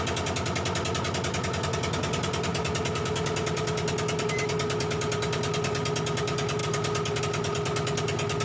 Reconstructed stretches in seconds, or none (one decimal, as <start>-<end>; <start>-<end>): none